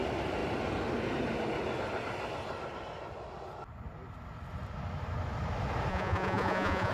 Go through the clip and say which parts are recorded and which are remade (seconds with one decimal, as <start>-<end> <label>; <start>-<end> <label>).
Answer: 0.0-5.9 recorded; 5.9-6.9 remade